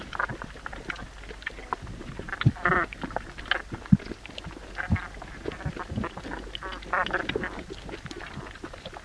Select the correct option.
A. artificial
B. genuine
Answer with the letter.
B